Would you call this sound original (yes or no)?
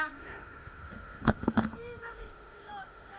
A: no